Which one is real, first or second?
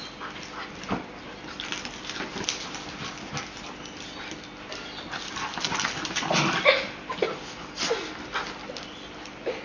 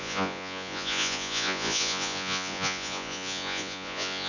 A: first